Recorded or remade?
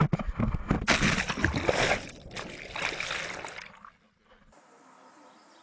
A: recorded